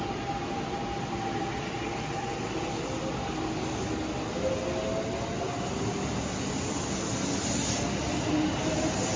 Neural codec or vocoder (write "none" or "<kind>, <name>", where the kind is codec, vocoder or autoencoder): none